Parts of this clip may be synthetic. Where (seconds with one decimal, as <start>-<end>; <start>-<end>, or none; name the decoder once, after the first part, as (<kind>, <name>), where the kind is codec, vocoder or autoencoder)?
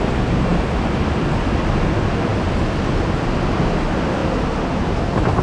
none